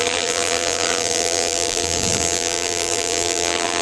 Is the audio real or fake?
fake